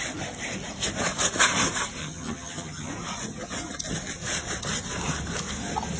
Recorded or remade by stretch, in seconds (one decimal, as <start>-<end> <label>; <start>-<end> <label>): 0.0-2.0 recorded; 2.0-2.9 remade; 2.9-6.0 recorded